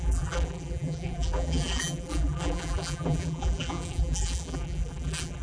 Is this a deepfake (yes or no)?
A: yes